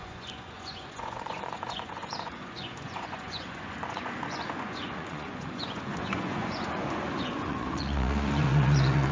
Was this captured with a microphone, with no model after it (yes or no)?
no